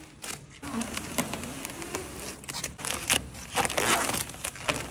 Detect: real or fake real